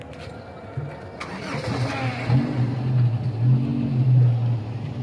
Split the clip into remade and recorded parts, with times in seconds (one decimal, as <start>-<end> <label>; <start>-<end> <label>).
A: 0.0-5.0 recorded